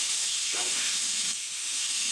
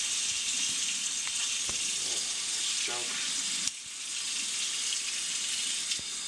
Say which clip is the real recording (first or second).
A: second